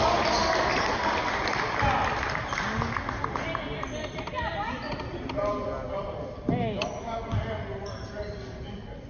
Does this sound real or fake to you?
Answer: real